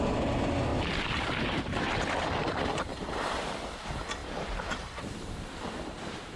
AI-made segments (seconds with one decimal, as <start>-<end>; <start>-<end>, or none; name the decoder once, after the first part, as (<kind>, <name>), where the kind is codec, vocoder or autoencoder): 2.9-3.7 (vocoder, BigVGAN v2); 4.2-5.3